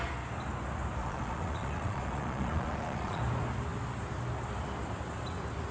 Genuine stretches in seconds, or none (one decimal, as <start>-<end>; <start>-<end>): 0.0-1.0; 3.2-5.7